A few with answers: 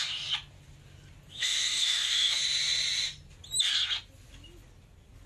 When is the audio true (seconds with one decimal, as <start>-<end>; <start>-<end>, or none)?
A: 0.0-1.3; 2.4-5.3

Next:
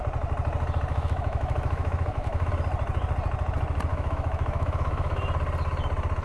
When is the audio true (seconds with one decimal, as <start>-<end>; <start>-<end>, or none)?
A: 0.0-0.9; 2.5-3.9; 5.2-6.2

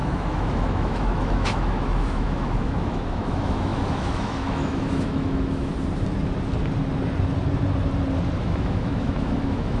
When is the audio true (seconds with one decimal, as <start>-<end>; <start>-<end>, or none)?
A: 5.7-8.4